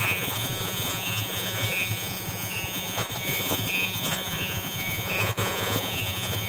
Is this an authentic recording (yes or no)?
no